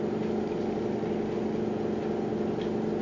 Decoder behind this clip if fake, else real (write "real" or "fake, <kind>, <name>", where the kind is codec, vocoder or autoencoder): real